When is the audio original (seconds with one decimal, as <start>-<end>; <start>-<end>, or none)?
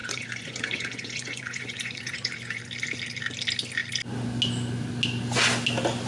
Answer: 2.6-6.1